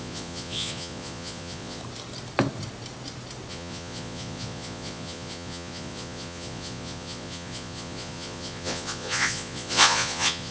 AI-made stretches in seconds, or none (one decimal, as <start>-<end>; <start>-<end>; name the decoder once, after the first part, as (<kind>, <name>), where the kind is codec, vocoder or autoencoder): 0.0-1.8 (vocoder, Vocos); 3.5-10.5